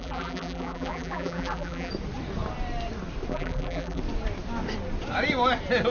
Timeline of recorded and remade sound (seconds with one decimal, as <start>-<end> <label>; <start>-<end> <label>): 0.0-1.9 remade; 1.9-3.3 recorded; 3.3-4.0 remade; 4.0-5.9 recorded